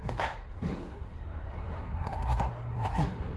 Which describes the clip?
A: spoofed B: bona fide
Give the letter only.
A